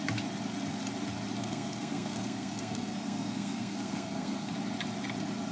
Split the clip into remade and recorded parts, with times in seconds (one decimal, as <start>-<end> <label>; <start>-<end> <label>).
0.0-1.4 recorded; 1.4-4.5 remade; 4.5-5.5 recorded